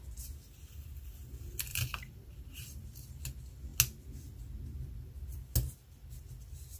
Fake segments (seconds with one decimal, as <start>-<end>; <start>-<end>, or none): 1.7-3.2